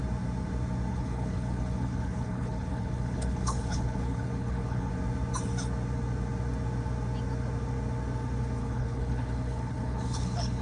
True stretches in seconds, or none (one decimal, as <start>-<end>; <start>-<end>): 0.0-0.9; 4.9-8.6